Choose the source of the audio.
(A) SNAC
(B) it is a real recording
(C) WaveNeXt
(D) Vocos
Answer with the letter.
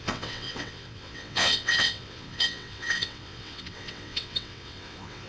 C